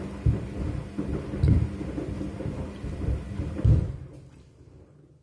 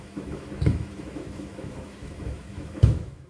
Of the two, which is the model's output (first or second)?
second